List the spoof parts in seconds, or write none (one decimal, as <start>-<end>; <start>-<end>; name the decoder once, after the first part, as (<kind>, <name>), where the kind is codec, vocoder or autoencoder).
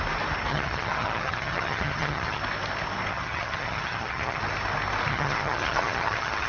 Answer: 0.5-2.4 (vocoder, HiFi-GAN); 3.1-4.4; 5.1-6.5